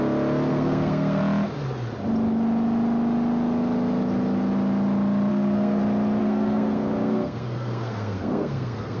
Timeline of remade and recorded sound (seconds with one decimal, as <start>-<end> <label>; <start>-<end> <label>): 0.0-0.5 recorded; 0.5-1.2 remade; 1.2-5.3 recorded; 5.3-5.8 remade; 5.8-6.2 recorded; 6.2-9.0 remade